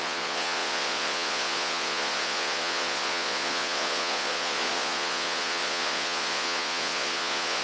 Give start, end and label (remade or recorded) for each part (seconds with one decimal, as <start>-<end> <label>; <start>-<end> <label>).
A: 0.0-7.6 remade